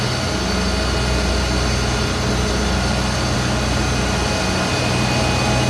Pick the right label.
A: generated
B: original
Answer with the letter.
B